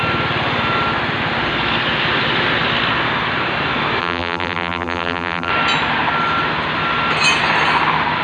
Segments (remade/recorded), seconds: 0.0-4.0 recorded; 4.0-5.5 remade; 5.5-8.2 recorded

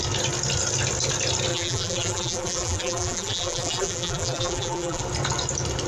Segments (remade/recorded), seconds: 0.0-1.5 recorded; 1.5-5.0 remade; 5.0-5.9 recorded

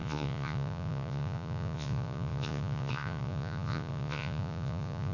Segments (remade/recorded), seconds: 0.0-5.1 remade

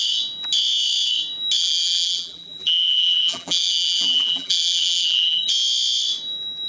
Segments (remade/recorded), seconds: 0.0-1.6 recorded; 1.6-5.5 remade; 5.5-6.7 recorded

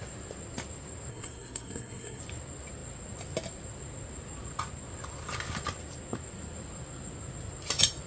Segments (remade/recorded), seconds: 0.0-1.1 recorded; 1.1-2.2 remade; 2.2-8.1 recorded

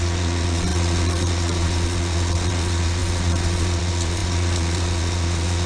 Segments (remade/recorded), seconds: 0.0-5.7 remade